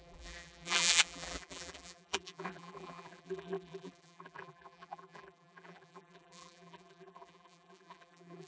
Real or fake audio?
fake